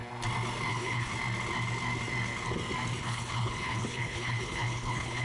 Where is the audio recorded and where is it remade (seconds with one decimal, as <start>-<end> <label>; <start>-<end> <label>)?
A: 0.0-0.7 recorded; 0.7-1.1 remade; 1.1-3.0 recorded; 3.0-5.2 remade